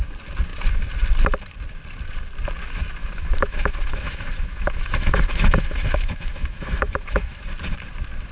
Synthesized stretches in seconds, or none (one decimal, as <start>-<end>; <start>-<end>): 3.0-7.4